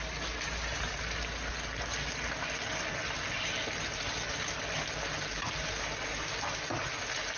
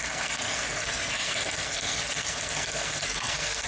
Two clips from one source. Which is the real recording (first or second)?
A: first